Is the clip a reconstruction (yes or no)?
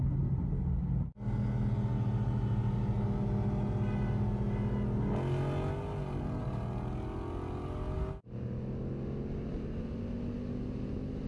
no